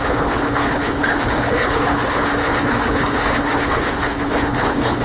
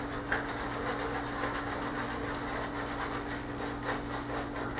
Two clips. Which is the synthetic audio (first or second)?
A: first